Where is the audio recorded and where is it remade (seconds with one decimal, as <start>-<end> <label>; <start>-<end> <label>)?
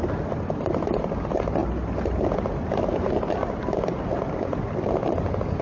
0.0-5.6 recorded